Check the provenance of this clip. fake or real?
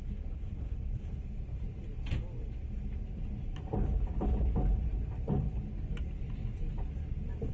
real